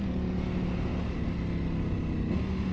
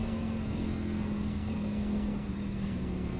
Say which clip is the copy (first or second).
second